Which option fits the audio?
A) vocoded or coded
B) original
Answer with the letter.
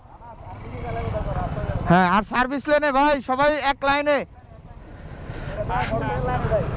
B